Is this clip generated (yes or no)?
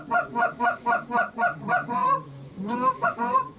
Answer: yes